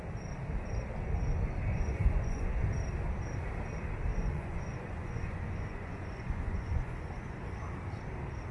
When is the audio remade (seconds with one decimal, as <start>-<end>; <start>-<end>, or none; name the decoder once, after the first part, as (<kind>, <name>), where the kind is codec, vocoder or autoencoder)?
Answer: 1.7-2.5 (vocoder, Vocos); 4.1-7.4